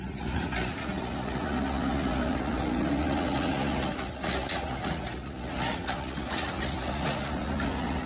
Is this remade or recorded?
remade